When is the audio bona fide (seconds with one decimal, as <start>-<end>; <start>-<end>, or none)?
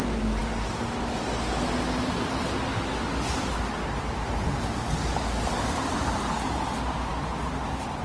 0.0-8.0